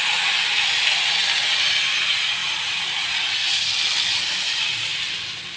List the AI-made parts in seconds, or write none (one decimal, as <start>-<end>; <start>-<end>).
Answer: 2.4-3.7